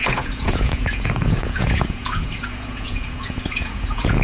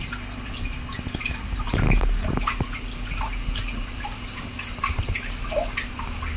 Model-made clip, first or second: first